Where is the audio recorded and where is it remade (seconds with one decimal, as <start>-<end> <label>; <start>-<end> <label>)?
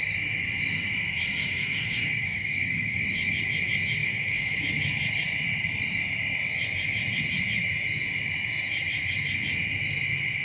0.0-1.4 recorded; 1.4-3.0 remade; 3.0-4.0 recorded; 4.0-4.6 remade; 4.6-10.4 recorded